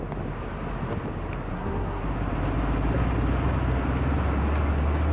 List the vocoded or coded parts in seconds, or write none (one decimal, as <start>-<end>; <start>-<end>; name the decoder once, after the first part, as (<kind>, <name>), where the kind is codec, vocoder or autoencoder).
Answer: 1.5-2.0 (codec, SNAC)